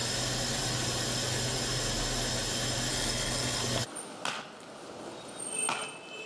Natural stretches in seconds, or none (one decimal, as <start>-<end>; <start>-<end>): 0.0-2.9; 3.6-6.3

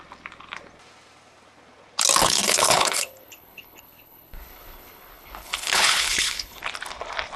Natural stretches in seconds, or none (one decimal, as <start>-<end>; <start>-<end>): 0.0-2.2; 6.6-7.4

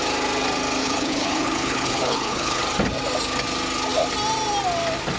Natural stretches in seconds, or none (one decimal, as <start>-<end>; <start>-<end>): 0.0-0.8; 2.6-5.2

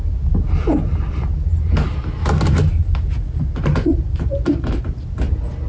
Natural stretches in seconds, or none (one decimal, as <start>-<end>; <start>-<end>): 0.0-5.7

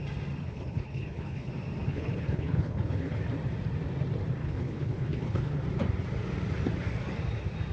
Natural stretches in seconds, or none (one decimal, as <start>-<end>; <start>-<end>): 0.0-0.4; 1.5-1.9; 3.2-4.4; 5.6-7.7